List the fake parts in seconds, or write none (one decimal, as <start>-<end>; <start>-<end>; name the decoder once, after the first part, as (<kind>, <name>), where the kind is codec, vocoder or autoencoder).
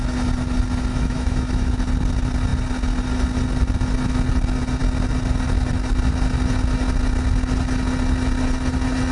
0.9-1.7 (autoencoder, DAC-VAE)